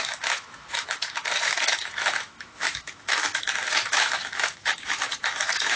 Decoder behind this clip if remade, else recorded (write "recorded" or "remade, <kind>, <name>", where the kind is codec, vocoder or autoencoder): remade, autoencoder, DAC-VAE